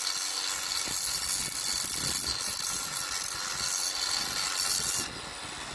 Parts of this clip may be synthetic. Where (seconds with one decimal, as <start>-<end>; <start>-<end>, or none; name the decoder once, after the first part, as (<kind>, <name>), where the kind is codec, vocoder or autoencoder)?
none